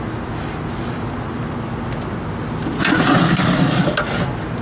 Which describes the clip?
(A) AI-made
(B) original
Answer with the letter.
B